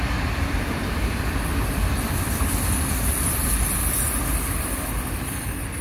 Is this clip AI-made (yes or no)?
yes